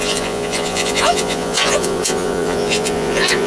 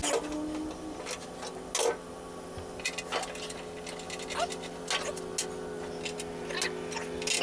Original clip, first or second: second